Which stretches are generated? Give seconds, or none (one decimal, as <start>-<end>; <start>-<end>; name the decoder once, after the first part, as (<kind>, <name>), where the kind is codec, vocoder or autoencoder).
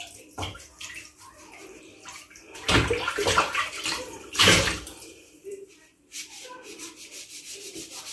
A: 0.0-8.1 (vocoder, BigVGAN v2)